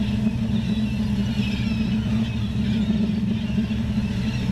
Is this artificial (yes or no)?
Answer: no